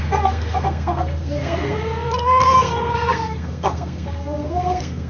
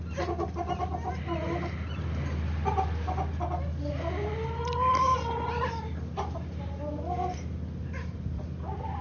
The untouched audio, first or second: second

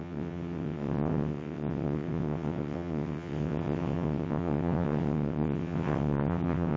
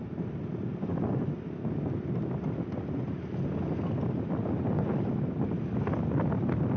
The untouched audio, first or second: second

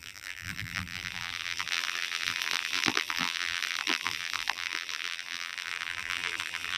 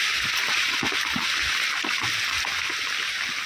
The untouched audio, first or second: second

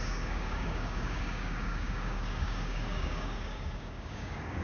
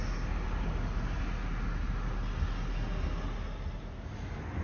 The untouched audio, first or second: second